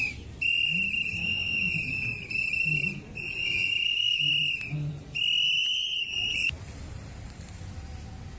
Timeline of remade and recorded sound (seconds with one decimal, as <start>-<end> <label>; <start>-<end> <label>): 0.0-1.2 recorded; 1.2-1.7 remade; 1.7-3.4 recorded; 3.4-4.3 remade; 4.3-8.4 recorded